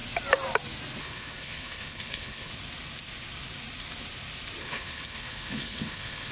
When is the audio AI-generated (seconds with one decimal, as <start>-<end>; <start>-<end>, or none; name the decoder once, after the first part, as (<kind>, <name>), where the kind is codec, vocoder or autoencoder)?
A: 1.0-2.5 (codec, HILCodec); 4.6-6.3